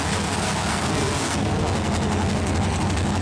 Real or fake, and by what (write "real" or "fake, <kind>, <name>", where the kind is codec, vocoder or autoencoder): fake, codec, SNAC